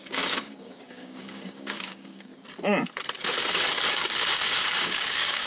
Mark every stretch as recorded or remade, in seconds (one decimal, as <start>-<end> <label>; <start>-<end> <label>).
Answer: 0.0-2.3 remade; 2.3-3.9 recorded; 3.9-5.5 remade